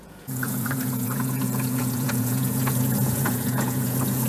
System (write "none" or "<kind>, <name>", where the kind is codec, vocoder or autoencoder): vocoder, Vocos